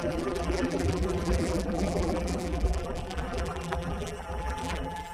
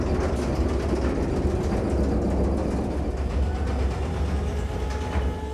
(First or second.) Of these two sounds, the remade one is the first